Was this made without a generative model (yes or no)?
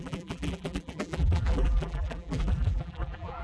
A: no